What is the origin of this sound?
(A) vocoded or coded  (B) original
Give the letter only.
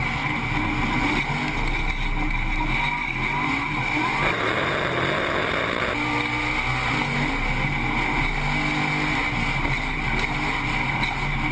B